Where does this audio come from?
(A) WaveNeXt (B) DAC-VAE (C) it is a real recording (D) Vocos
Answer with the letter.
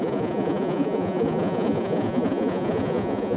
D